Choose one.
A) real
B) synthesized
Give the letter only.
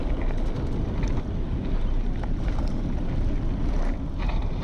A